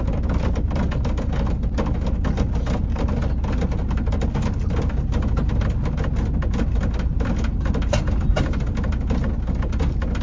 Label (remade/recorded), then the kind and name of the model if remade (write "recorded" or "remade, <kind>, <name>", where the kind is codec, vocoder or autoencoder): recorded